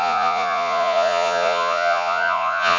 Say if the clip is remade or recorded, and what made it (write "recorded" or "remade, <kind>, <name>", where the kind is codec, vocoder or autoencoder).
remade, vocoder, Vocos